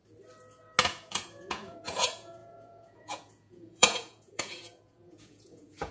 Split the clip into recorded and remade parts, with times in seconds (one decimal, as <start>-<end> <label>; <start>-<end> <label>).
0.0-0.8 recorded; 0.8-5.9 remade